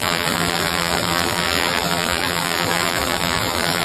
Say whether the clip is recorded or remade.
remade